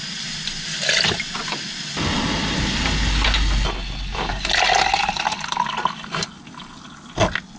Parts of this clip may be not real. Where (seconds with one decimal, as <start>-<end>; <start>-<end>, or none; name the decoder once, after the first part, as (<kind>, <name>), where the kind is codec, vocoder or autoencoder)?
none